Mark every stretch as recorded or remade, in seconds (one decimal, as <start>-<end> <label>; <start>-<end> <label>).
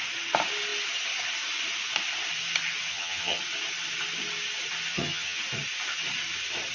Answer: 0.0-2.9 recorded; 2.9-3.4 remade; 3.4-4.9 recorded; 4.9-5.4 remade; 5.4-6.7 recorded